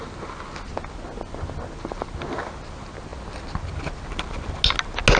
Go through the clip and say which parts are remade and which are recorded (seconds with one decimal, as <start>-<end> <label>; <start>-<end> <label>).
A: 0.0-5.2 recorded